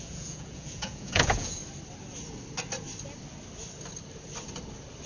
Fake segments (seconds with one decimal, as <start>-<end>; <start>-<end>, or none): 0.0-1.6

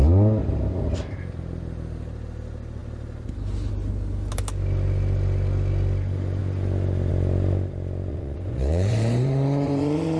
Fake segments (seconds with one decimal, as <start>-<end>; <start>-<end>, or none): 8.1-10.2

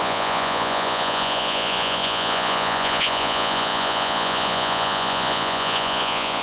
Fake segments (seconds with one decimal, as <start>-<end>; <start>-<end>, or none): 0.0-6.4

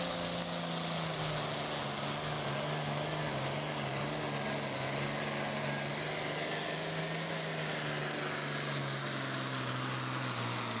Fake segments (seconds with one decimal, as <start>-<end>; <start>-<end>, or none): none

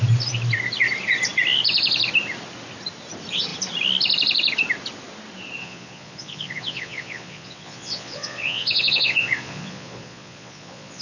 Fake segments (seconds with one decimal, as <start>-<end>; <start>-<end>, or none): 5.6-11.0

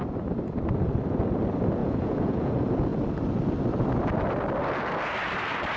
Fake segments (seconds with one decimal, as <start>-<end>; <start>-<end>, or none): 1.8-2.5